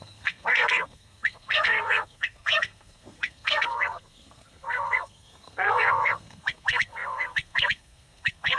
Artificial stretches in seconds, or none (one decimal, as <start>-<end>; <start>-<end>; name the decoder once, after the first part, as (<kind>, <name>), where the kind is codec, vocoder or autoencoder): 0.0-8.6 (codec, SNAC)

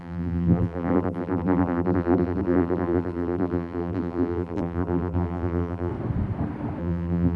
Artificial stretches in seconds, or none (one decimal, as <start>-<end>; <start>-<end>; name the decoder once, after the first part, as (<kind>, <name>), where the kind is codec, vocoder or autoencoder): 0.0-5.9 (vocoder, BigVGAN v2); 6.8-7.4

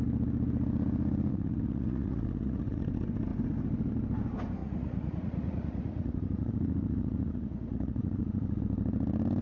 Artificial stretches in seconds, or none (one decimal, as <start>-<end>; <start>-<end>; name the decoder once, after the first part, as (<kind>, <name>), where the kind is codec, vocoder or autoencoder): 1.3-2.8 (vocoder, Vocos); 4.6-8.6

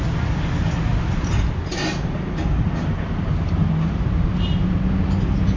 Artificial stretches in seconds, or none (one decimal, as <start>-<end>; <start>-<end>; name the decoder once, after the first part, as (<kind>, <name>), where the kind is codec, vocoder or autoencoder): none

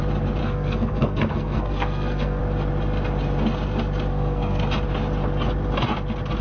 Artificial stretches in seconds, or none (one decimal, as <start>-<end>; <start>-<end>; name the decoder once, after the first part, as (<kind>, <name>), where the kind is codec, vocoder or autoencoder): 0.4-2.4 (codec, SNAC); 4.1-4.6